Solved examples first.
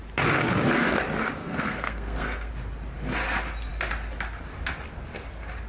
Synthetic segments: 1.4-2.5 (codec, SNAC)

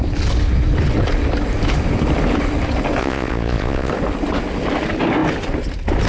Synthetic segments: 3.0-3.9 (vocoder, Vocos)

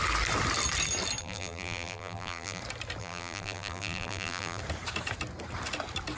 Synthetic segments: 1.2-2.6 (vocoder, BigVGAN v2); 3.0-4.6

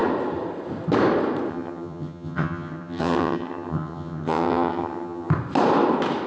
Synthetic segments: 1.5-5.3 (vocoder, HiFi-GAN)

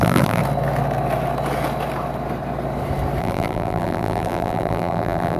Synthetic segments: 0.0-0.4 (vocoder, BigVGAN v2); 3.2-5.4

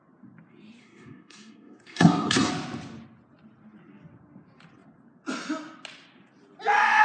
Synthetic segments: 0.8-2.5 (codec, SNAC)